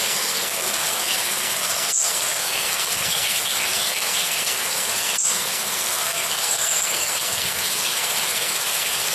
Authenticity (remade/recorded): remade